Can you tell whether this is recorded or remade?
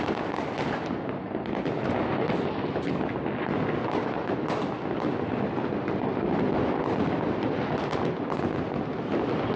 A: recorded